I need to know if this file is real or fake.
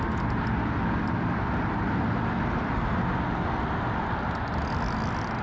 real